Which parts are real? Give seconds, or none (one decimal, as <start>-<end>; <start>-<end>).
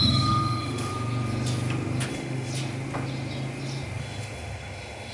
0.9-2.1; 2.5-4.0